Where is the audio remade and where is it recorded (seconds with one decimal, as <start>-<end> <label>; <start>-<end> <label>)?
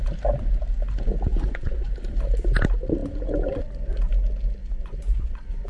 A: 0.0-1.3 recorded; 1.3-1.9 remade; 1.9-4.6 recorded; 4.6-5.7 remade